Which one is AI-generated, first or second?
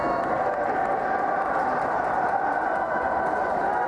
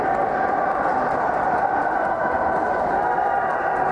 second